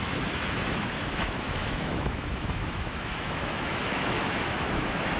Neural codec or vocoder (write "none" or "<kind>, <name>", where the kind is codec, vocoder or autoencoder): autoencoder, DAC-VAE